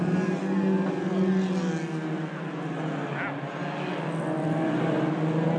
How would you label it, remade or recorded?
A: recorded